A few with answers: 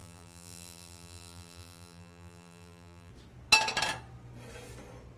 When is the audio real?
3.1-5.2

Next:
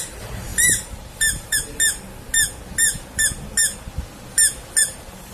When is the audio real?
1.6-4.8

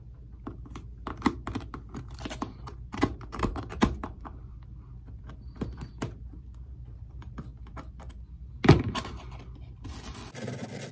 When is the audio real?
0.0-2.5; 4.0-10.9

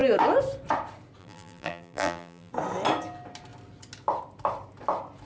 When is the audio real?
0.0-1.2; 2.5-5.3

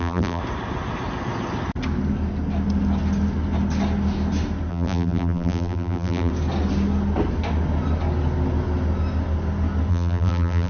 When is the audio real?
0.4-4.7; 6.3-9.9

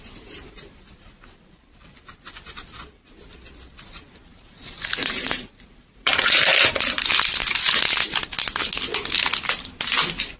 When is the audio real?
0.0-4.3; 6.6-10.4

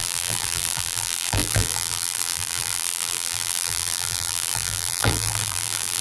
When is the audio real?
none

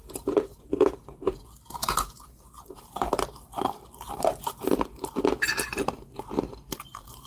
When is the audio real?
1.4-1.8; 5.8-7.3